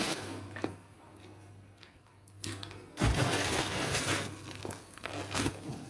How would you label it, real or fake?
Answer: fake